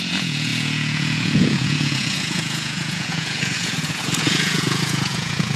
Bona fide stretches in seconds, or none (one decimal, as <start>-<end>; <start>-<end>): none